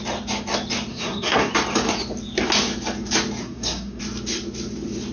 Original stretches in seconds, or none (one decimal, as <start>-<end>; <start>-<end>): 0.0-0.9; 1.5-3.4; 4.0-5.1